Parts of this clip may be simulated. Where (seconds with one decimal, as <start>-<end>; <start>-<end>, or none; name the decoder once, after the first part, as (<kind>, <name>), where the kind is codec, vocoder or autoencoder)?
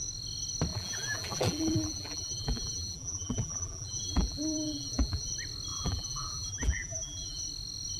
0.7-5.3 (vocoder, BigVGAN v2); 5.7-7.4